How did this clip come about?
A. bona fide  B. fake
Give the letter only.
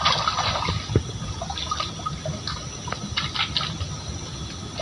A